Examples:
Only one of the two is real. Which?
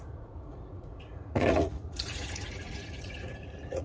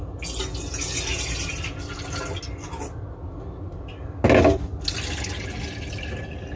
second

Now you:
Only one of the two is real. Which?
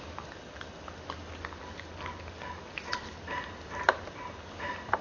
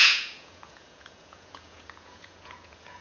first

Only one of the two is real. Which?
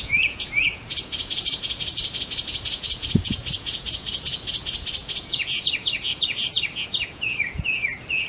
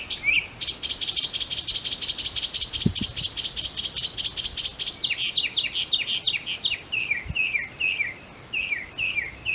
second